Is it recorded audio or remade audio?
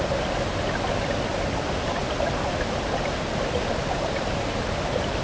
recorded